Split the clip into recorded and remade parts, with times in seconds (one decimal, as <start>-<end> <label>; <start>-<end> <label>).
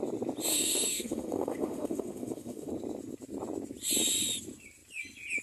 0.0-0.5 recorded; 0.5-2.7 remade; 2.7-5.4 recorded